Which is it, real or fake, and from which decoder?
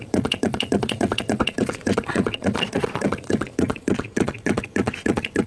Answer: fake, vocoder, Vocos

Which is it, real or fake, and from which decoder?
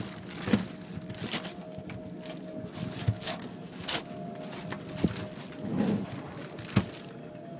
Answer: real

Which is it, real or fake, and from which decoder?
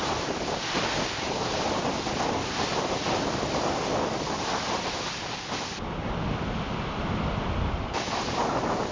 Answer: real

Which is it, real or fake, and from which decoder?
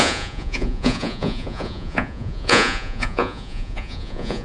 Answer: fake, vocoder, Vocos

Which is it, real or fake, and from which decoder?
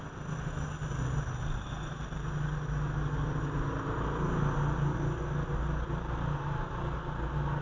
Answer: real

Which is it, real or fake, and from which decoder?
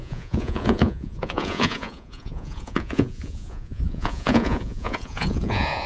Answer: fake, vocoder, Vocos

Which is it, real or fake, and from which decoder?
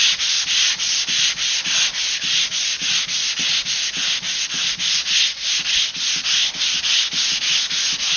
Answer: real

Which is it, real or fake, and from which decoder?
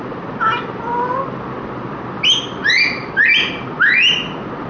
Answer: real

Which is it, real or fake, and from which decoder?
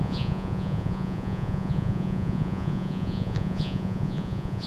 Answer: fake, vocoder, Vocos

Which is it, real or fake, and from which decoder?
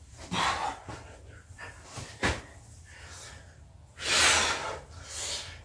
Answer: real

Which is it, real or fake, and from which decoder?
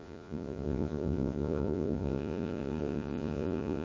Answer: fake, vocoder, Vocos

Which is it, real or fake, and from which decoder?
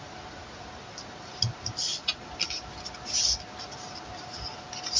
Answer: real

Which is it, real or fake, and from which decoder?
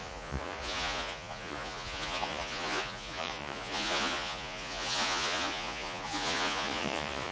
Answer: fake, vocoder, Vocos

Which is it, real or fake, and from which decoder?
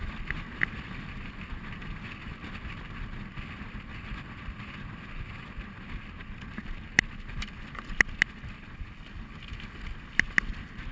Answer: real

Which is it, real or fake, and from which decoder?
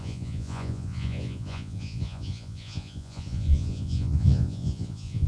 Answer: fake, vocoder, Vocos